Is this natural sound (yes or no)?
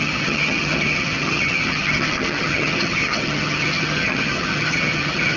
no